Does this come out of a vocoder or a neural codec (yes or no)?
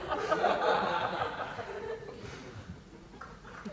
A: yes